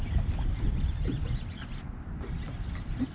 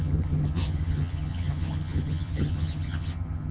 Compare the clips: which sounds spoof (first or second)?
second